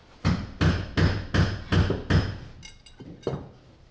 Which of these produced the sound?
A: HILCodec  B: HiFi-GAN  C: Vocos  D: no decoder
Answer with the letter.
D